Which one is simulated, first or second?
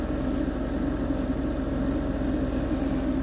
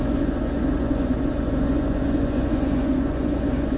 second